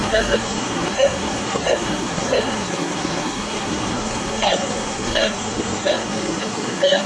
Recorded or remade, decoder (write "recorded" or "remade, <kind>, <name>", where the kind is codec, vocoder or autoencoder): remade, codec, SNAC